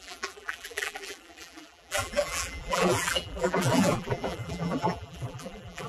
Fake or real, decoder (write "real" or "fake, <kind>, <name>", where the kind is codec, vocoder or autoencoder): fake, vocoder, BigVGAN v2